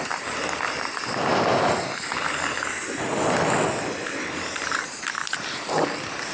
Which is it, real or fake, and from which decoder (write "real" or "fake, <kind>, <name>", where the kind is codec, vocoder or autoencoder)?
real